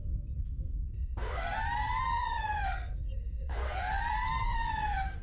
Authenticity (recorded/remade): remade